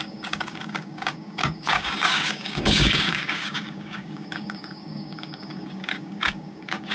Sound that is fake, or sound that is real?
fake